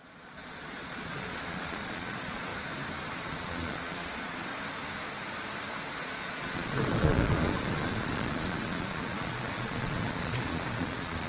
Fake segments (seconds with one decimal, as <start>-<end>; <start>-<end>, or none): 0.0-2.5; 3.1-4.5; 6.0-11.3